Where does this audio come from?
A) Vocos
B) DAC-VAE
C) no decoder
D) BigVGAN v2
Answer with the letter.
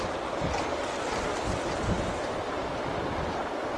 C